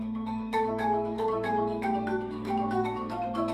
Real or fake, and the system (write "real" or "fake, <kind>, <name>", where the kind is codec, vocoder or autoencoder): fake, autoencoder, DAC-VAE